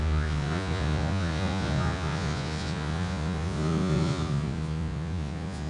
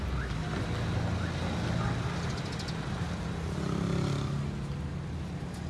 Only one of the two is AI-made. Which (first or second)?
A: first